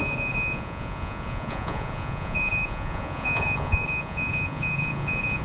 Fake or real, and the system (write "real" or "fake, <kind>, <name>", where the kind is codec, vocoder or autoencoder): fake, vocoder, Vocos